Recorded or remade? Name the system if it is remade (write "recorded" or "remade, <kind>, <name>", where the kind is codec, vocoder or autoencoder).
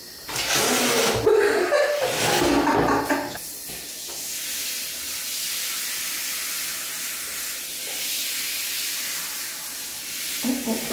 recorded